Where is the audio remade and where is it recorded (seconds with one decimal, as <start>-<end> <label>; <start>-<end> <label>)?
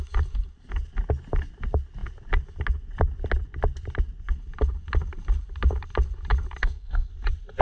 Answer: 0.0-6.6 recorded; 6.6-7.1 remade; 7.1-7.6 recorded